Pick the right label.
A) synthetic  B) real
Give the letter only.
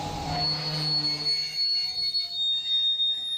B